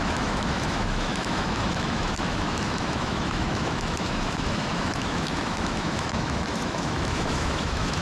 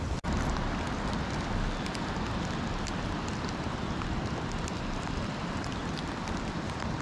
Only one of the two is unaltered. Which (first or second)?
second